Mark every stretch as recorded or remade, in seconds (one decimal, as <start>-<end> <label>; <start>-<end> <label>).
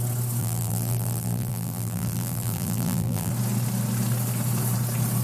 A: 0.0-0.4 recorded; 0.4-3.3 remade; 3.3-5.2 recorded